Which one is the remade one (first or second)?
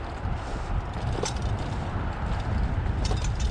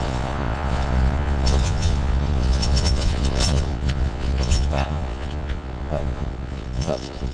second